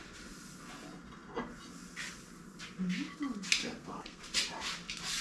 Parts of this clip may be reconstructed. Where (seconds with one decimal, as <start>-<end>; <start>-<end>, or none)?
3.6-4.2